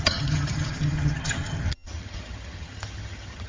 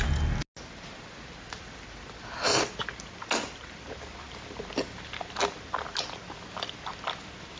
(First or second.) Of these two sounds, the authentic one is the second